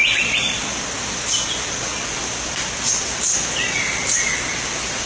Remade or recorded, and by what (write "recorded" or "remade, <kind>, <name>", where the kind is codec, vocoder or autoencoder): recorded